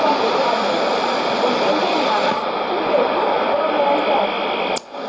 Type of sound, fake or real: real